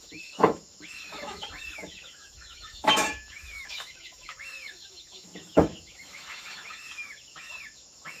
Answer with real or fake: fake